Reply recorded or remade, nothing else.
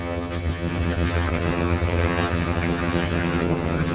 remade